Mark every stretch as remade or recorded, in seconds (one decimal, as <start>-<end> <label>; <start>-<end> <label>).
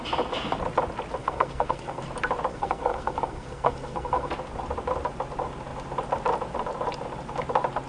0.0-1.2 recorded; 1.2-2.0 remade; 2.0-2.5 recorded; 2.5-4.3 remade; 4.3-7.9 recorded